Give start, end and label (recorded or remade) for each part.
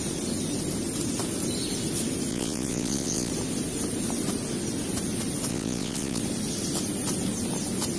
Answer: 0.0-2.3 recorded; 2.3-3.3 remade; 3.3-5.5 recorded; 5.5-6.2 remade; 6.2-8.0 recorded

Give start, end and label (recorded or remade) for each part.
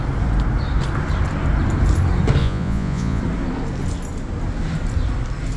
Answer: 0.0-2.4 recorded; 2.4-3.2 remade; 3.2-5.6 recorded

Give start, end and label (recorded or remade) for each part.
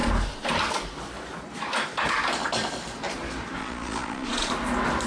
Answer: 0.0-3.6 recorded; 3.6-4.5 remade; 4.5-5.1 recorded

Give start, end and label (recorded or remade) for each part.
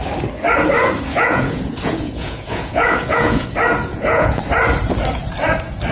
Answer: 0.0-1.1 recorded; 1.1-3.5 remade; 3.5-3.9 recorded; 3.9-4.4 remade; 4.4-5.9 recorded